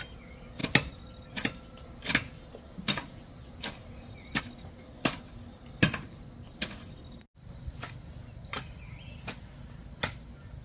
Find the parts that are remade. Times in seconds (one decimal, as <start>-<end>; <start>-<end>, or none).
none

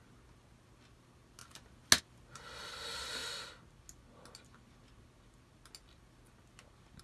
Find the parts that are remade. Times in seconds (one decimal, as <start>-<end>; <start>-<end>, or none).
none

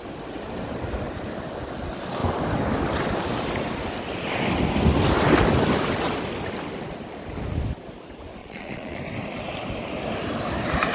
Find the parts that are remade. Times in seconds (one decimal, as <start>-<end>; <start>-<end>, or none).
8.4-9.0

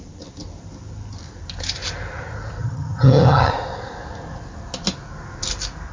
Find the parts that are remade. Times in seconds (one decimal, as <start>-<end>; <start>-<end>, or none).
2.6-3.5

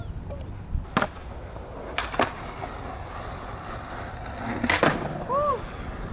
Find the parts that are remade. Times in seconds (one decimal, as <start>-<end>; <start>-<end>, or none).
none

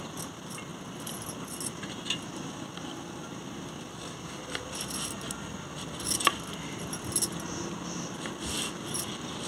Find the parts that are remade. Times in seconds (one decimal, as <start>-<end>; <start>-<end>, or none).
none